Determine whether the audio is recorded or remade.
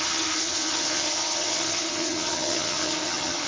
remade